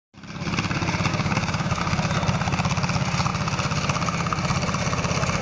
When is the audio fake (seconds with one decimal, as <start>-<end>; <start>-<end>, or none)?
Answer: 1.1-1.8